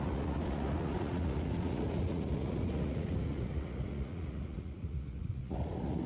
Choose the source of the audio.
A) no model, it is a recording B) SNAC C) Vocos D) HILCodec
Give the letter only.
C